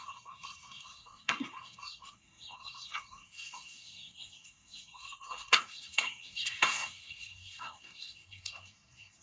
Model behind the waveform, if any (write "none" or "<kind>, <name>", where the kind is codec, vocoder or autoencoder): codec, SNAC